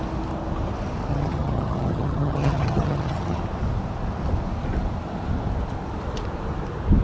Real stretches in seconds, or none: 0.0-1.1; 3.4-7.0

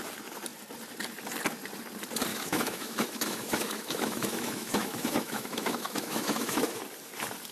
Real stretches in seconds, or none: 0.0-2.3; 6.8-7.5

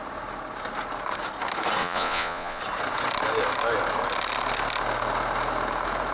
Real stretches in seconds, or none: 0.0-1.8; 2.6-6.1

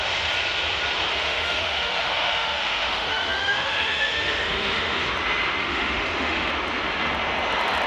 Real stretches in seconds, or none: 0.0-1.1; 5.1-5.6; 6.5-7.9

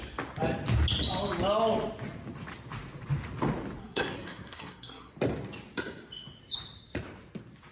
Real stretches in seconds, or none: 0.0-3.8; 5.1-7.7

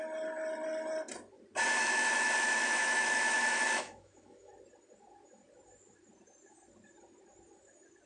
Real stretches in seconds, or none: 0.0-1.8; 4.5-8.1